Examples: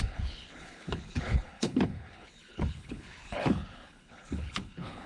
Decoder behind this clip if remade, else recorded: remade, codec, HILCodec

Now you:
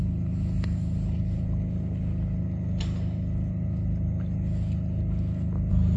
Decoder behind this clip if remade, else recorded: recorded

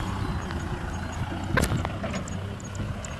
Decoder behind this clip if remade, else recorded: recorded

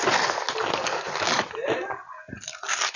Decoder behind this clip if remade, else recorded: recorded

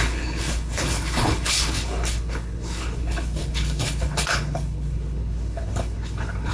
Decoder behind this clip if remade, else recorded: remade, codec, HILCodec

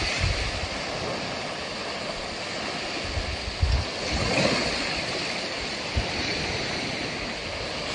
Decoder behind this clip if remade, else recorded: recorded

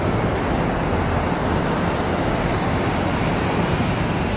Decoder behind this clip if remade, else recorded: recorded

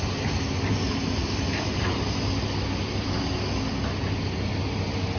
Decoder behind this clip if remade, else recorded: recorded